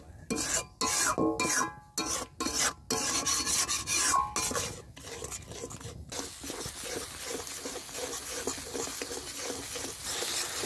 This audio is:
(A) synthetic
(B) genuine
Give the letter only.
B